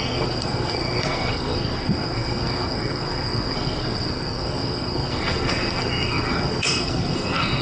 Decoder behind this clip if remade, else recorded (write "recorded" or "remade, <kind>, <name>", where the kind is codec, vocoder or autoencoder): remade, codec, SNAC